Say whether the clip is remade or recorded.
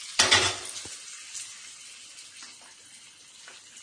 recorded